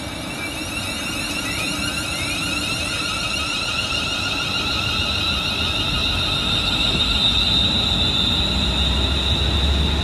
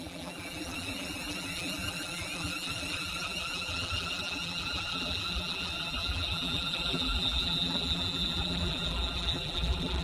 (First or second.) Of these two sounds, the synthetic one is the second